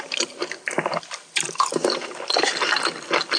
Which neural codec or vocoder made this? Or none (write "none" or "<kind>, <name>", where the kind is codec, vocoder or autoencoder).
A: none